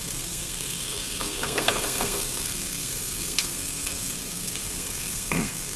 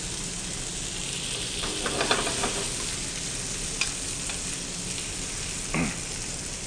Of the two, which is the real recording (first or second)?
second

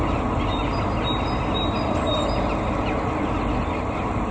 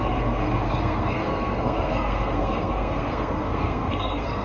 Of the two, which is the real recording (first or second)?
first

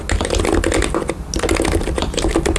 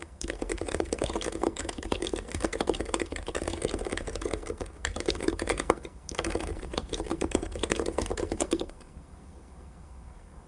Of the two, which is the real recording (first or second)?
first